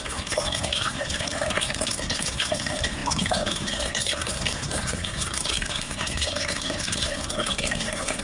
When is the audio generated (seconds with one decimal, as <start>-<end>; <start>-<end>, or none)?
0.0-8.2